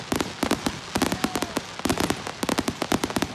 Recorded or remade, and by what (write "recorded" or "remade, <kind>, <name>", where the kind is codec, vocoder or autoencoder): recorded